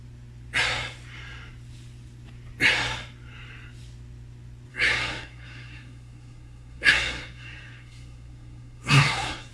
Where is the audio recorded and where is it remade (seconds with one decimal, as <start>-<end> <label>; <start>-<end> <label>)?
0.0-4.7 recorded; 4.7-9.5 remade